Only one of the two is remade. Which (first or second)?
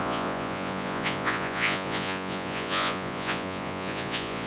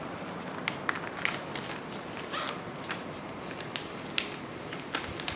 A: first